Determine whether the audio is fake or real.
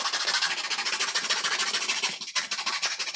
real